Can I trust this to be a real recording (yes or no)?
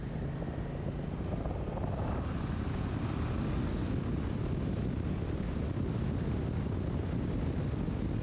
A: yes